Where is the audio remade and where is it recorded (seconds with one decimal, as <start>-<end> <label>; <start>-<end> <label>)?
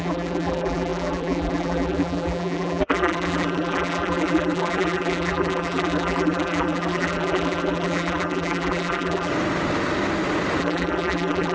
0.0-9.3 remade; 9.3-10.6 recorded; 10.6-11.5 remade